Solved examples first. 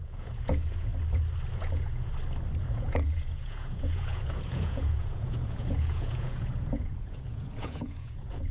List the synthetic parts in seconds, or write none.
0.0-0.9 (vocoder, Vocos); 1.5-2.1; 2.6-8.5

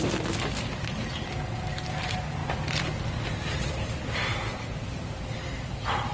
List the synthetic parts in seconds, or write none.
none